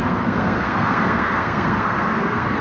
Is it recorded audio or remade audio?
remade